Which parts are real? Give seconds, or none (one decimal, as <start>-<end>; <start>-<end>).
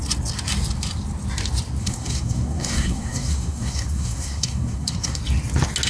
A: 0.0-1.8; 5.2-5.9